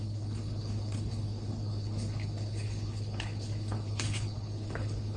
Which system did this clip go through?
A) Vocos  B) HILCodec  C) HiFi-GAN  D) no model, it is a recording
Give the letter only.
B